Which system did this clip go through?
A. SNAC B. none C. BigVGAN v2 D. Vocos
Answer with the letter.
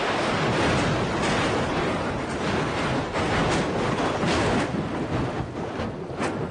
B